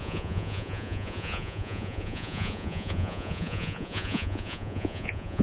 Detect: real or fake fake